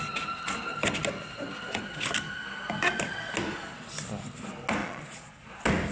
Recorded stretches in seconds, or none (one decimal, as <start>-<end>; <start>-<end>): 0.0-4.8; 5.5-5.9